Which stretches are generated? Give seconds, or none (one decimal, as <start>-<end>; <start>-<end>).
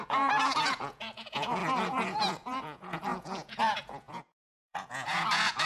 0.0-5.7